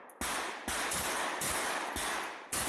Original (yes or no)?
yes